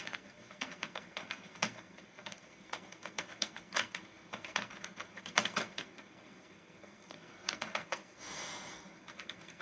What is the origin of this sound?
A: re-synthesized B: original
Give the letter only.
A